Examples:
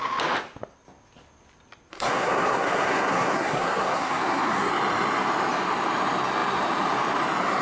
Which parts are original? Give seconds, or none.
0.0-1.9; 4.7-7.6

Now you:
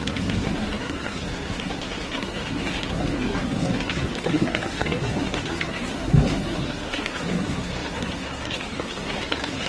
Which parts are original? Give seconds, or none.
none

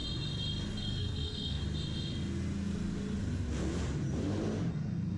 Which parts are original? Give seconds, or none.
0.0-0.8; 1.6-4.7

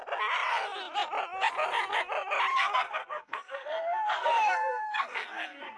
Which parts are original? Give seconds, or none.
0.0-2.5

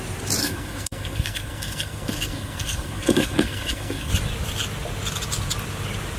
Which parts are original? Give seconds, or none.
0.0-0.4; 4.1-6.2

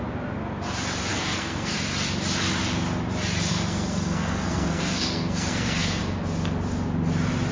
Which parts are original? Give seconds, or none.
0.0-1.1; 1.7-3.5; 6.0-7.5

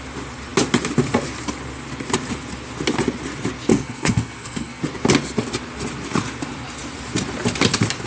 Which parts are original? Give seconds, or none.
0.0-3.7; 4.8-8.1